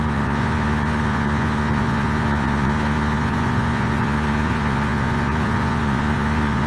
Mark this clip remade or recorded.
remade